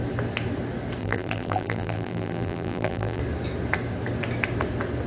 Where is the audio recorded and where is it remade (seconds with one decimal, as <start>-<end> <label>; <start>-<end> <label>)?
0.0-1.0 recorded; 1.0-3.2 remade; 3.2-5.1 recorded